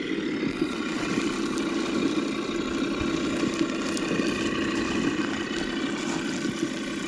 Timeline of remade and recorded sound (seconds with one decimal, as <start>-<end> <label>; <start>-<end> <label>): 0.0-0.5 recorded; 0.5-1.1 remade; 1.1-7.1 recorded